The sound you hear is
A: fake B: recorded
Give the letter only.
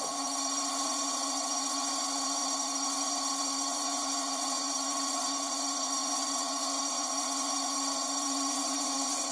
A